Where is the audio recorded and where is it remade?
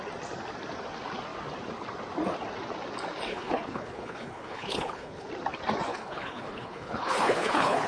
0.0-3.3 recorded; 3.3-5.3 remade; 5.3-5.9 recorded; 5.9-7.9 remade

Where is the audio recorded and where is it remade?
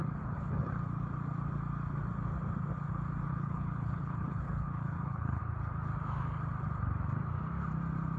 0.0-0.7 remade; 0.7-3.3 recorded; 3.3-5.4 remade; 5.4-8.2 recorded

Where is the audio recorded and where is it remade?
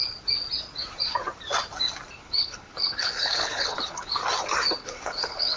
0.0-2.2 recorded; 2.2-4.2 remade; 4.2-4.8 recorded; 4.8-5.6 remade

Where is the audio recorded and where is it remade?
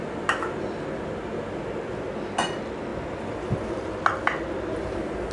0.0-5.3 recorded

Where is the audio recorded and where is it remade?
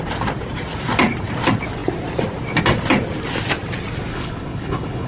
0.0-4.1 recorded; 4.1-5.1 remade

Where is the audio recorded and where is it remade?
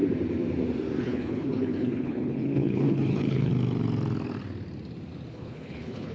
0.0-1.0 recorded; 1.0-3.5 remade; 3.5-5.3 recorded; 5.3-6.1 remade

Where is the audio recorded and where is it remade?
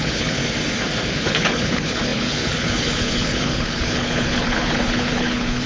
0.0-0.4 remade; 0.4-1.1 recorded; 1.1-5.7 remade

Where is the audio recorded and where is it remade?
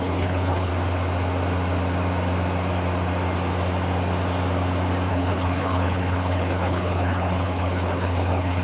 0.0-0.7 remade; 0.7-5.1 recorded; 5.1-8.6 remade